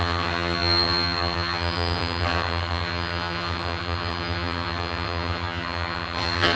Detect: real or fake fake